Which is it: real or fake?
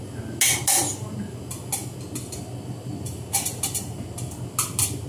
real